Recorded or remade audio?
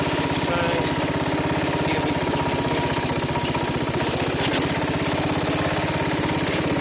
recorded